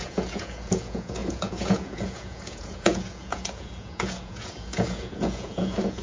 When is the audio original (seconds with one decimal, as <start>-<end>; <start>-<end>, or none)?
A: none